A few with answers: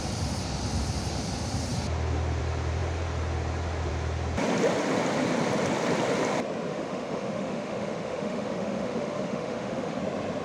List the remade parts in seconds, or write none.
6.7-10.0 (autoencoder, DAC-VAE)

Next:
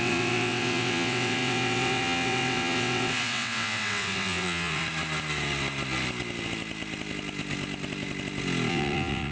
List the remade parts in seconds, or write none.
0.0-4.8 (vocoder, WaveNeXt); 8.7-9.3

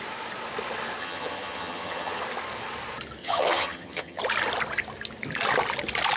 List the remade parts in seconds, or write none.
1.0-2.2 (vocoder, HiFi-GAN); 3.2-4.2